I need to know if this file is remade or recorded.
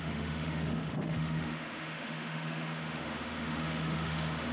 remade